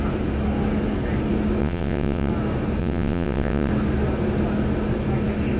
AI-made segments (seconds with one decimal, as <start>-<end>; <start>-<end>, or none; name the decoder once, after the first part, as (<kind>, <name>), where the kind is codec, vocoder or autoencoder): 1.6-2.3 (vocoder, WaveNeXt); 2.8-3.7